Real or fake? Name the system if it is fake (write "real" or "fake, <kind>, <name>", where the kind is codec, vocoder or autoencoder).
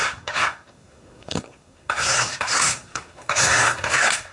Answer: fake, codec, SNAC